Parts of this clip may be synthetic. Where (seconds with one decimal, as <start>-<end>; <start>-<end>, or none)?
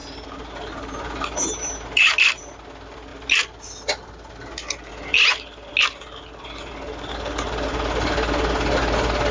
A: none